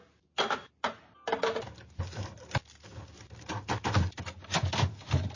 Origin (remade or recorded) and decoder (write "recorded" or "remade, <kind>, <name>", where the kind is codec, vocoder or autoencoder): recorded